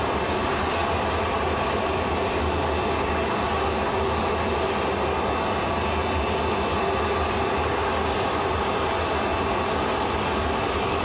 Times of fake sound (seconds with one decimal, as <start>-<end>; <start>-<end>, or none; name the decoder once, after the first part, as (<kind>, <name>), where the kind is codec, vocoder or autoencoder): none